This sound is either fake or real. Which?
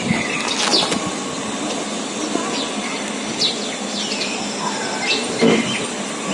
real